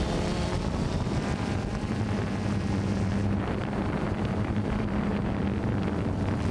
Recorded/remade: remade